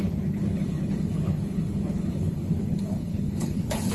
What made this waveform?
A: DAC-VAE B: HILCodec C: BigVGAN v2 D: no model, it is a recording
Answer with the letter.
B